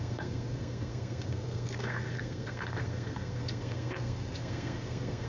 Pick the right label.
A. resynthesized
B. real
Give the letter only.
A